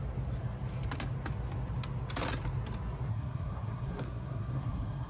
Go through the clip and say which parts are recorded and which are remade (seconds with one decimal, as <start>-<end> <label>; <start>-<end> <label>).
0.0-3.1 recorded; 3.1-5.1 remade